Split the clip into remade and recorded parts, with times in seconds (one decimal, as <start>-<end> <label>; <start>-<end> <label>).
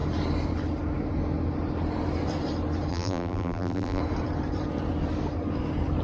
0.0-2.9 recorded; 2.9-4.0 remade; 4.0-6.0 recorded